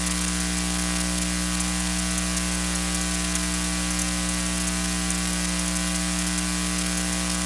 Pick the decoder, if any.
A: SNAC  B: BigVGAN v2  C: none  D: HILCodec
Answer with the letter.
C